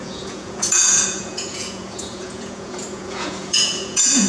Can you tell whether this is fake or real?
fake